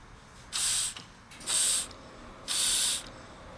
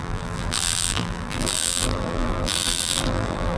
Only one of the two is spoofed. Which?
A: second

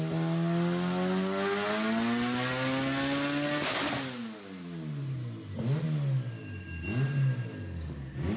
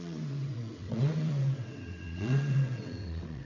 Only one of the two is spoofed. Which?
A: second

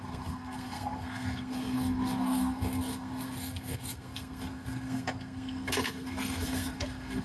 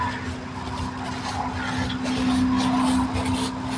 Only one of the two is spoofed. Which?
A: first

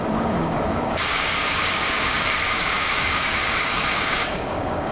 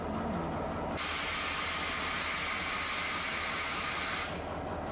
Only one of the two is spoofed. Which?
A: first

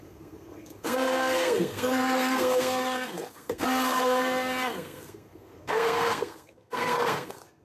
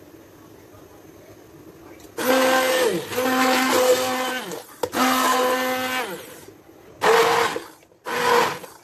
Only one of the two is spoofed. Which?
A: first